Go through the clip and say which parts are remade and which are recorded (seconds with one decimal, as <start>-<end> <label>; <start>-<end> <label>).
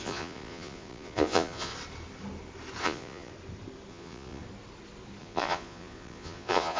0.0-1.7 remade; 1.7-2.8 recorded; 2.8-3.3 remade; 3.3-3.9 recorded; 3.9-4.4 remade; 4.4-5.2 recorded; 5.2-6.8 remade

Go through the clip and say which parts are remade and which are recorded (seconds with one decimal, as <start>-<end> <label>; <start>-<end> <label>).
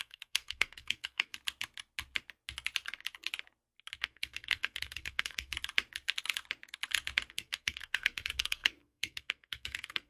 0.0-1.3 remade; 1.3-4.0 recorded; 4.0-5.5 remade; 5.5-7.3 recorded; 7.3-10.1 remade